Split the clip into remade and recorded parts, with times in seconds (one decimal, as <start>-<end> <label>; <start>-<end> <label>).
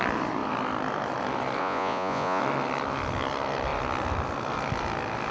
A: 0.0-1.6 recorded; 1.6-2.4 remade; 2.4-5.3 recorded